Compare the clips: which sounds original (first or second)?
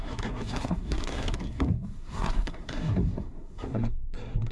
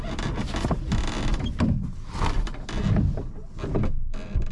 second